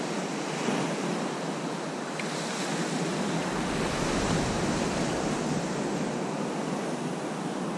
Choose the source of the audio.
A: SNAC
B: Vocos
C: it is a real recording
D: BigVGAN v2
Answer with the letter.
C